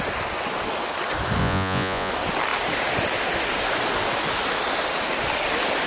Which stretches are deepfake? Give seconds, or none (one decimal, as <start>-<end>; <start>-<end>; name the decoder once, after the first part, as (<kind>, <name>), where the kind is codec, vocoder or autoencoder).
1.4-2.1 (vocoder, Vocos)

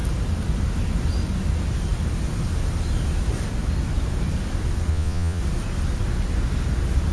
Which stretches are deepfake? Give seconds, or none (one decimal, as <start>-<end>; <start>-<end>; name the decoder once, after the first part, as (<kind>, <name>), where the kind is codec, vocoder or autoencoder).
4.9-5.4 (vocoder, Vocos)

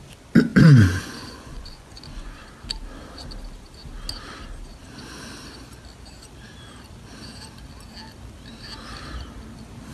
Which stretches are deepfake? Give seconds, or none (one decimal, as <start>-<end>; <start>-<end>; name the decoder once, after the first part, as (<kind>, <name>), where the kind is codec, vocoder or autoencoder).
0.5-2.4 (vocoder, Vocos)

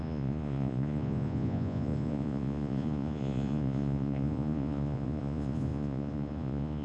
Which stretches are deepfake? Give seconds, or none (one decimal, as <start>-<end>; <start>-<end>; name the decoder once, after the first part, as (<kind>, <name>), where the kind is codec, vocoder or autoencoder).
0.0-6.8 (vocoder, Vocos)

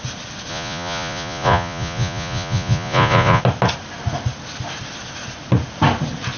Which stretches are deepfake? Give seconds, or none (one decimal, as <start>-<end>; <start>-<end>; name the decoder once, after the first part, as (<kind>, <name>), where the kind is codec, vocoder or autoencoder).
0.5-3.4 (vocoder, Vocos)

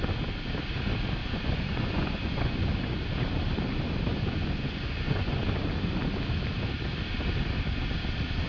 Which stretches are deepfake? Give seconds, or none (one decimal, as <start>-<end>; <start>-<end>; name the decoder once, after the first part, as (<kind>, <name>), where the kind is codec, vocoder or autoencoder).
1.2-2.7 (vocoder, Vocos); 4.1-5.4

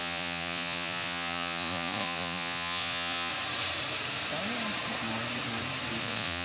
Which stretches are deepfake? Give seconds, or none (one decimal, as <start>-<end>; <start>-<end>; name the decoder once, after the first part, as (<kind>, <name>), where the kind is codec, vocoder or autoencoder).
0.0-3.3 (vocoder, Vocos); 6.0-6.4